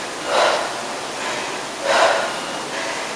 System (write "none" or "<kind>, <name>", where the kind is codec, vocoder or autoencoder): none